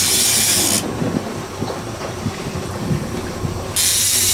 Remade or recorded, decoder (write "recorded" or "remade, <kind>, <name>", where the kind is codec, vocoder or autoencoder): recorded